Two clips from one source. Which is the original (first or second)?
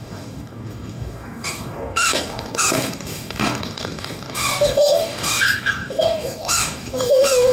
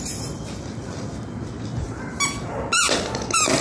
second